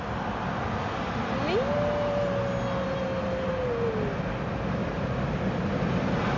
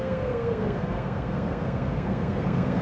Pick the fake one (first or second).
second